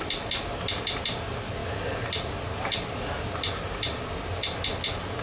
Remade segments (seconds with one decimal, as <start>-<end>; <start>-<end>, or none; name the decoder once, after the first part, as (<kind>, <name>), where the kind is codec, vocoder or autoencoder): none